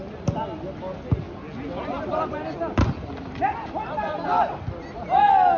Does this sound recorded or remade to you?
recorded